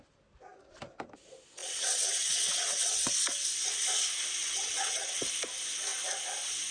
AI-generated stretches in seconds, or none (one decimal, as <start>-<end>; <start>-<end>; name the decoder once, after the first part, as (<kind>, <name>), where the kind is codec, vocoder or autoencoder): 1.6-3.1 (vocoder, WaveNeXt); 4.4-5.3